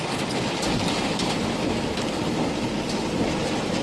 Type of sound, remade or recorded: recorded